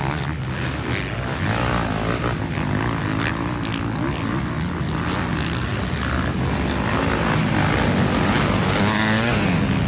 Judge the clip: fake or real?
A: real